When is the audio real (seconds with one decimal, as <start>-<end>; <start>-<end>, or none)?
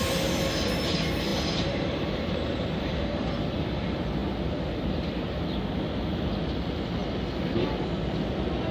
0.0-1.3; 3.4-8.7